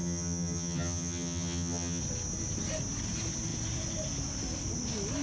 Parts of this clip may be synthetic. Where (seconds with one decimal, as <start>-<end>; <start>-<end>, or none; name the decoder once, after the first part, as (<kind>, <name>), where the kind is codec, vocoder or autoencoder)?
0.0-2.0 (vocoder, HiFi-GAN)